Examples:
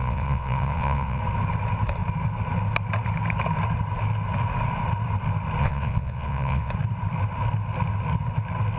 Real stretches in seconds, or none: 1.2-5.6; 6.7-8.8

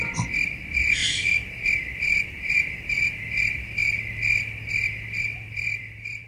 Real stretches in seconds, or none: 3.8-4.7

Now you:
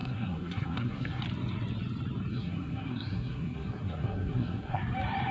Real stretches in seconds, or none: 1.2-2.3; 4.8-5.3

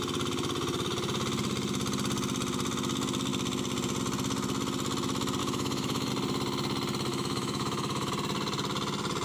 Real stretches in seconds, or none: 0.0-5.4; 6.1-7.1; 8.1-9.2

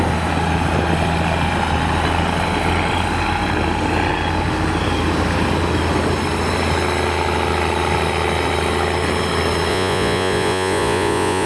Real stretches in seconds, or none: 0.0-9.7